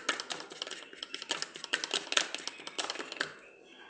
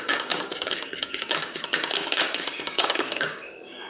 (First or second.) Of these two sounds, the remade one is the second